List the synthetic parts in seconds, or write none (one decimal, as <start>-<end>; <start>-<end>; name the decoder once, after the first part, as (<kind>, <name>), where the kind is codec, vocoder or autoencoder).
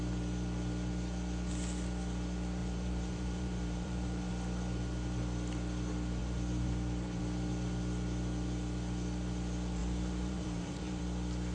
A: 2.6-4.3 (vocoder, BigVGAN v2); 6.2-7.2; 9.8-11.0